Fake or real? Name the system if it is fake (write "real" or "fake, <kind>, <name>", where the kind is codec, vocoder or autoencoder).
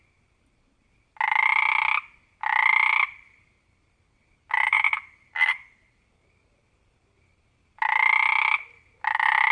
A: real